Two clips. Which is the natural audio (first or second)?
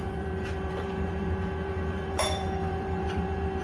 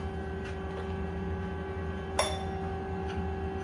second